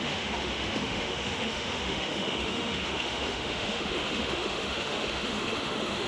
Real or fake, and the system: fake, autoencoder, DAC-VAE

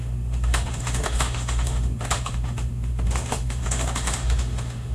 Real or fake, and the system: fake, autoencoder, DAC-VAE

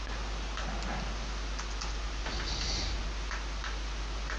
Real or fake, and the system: real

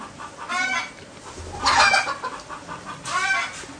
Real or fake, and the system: real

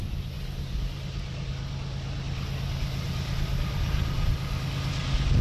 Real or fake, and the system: real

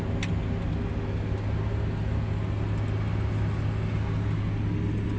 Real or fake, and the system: real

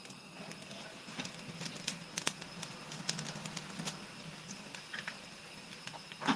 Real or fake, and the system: real